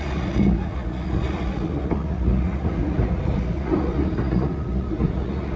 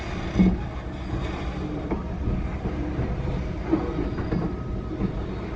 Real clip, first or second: second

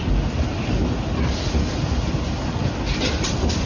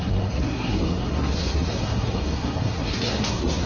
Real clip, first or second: first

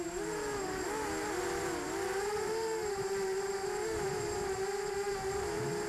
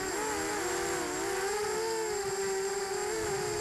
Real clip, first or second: second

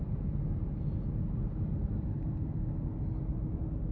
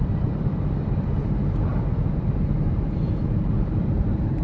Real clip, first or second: first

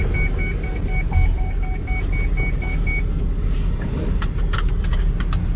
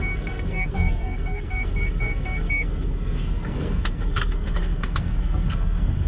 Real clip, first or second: first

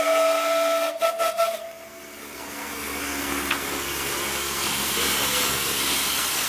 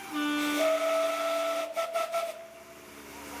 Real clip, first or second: second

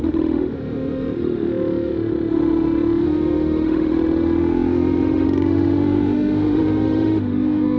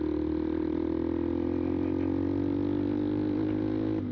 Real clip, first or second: second